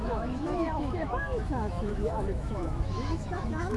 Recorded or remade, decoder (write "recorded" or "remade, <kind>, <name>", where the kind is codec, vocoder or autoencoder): remade, autoencoder, DAC-VAE